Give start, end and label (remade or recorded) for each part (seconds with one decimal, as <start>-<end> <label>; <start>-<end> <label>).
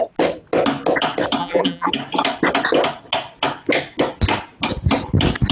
0.0-1.4 recorded; 1.4-1.9 remade; 1.9-5.5 recorded